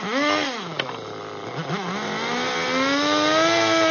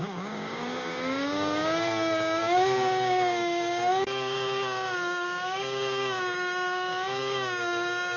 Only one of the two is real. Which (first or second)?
first